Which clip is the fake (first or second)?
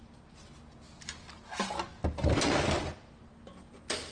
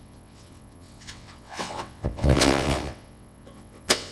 second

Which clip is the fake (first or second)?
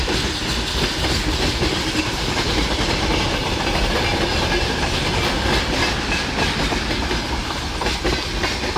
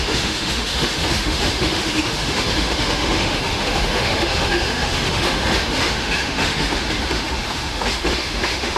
second